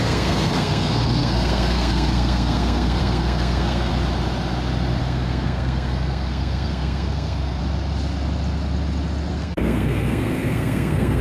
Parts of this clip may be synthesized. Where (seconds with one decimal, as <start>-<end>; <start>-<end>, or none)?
0.0-3.9; 5.0-7.6; 9.3-11.2